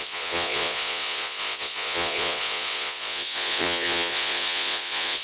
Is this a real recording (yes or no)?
no